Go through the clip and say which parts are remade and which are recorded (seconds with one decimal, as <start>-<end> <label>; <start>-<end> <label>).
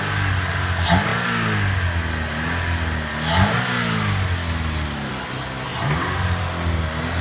0.0-5.7 recorded; 5.7-6.4 remade; 6.4-7.2 recorded